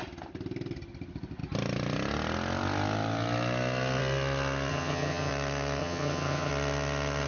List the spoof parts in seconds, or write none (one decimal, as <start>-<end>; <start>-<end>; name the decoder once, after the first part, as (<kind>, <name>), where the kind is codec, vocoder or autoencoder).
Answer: 4.7-5.3 (vocoder, HiFi-GAN); 5.8-6.5